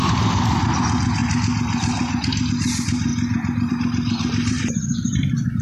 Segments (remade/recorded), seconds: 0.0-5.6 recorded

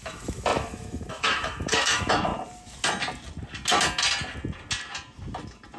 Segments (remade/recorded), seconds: 0.0-2.3 remade; 2.3-5.8 recorded

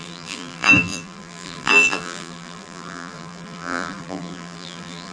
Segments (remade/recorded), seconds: 0.0-5.1 remade

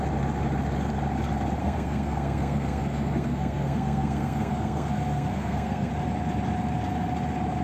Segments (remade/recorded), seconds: 0.0-1.6 recorded; 1.6-5.9 remade; 5.9-7.6 recorded

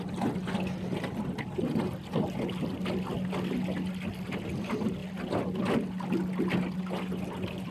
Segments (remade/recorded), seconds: 0.0-7.7 recorded